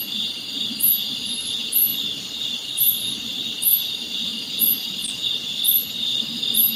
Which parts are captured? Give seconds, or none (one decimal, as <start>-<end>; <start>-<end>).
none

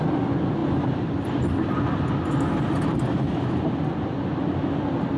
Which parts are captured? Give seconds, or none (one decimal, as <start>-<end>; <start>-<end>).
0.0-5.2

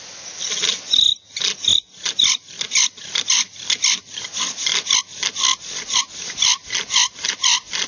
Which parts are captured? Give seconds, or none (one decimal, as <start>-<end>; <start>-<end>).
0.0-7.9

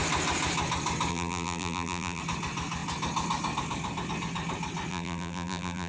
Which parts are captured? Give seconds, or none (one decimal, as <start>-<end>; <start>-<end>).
0.0-1.1; 2.2-4.9